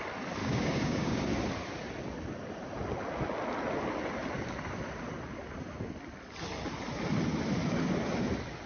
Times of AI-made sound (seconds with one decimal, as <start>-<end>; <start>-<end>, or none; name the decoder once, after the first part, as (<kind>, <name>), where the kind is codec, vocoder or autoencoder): 0.4-1.2 (codec, DAC)